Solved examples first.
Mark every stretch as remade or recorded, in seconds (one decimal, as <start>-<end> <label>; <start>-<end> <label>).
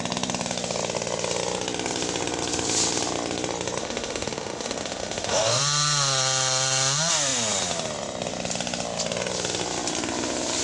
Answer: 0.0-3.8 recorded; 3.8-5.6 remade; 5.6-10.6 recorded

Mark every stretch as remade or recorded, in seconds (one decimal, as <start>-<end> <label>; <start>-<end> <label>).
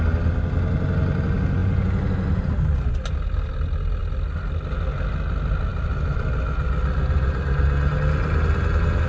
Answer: 0.0-9.1 recorded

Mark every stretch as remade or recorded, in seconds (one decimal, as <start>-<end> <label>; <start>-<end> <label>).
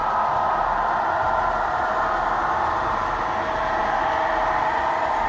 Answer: 0.0-5.3 recorded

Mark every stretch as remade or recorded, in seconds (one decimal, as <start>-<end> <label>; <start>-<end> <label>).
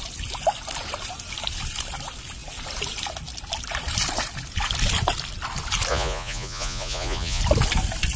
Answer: 0.0-5.9 recorded; 5.9-7.4 remade; 7.4-8.2 recorded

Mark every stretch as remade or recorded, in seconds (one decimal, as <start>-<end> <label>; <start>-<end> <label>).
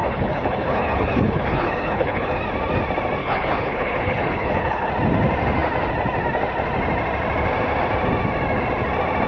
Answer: 0.0-2.4 remade; 2.4-3.2 recorded; 3.2-4.9 remade; 4.9-9.3 recorded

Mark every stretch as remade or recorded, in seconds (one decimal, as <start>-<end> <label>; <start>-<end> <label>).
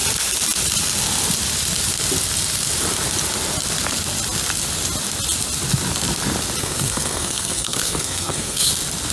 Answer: 0.0-6.6 recorded; 6.6-8.7 remade; 8.7-9.1 recorded